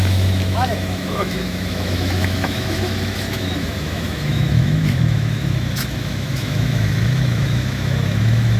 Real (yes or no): no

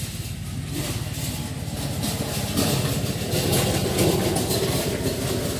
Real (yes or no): yes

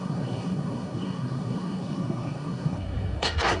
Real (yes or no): no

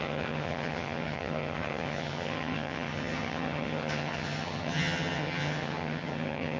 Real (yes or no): no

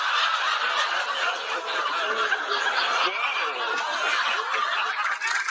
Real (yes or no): yes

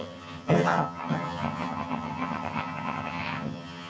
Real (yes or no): no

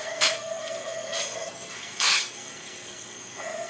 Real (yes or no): no